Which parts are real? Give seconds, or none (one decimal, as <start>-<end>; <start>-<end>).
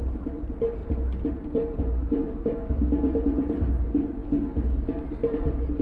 0.8-1.3; 4.2-4.8